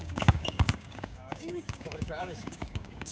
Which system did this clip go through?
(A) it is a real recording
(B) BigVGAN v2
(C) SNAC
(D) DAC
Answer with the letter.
D